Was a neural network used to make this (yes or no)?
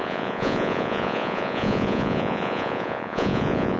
yes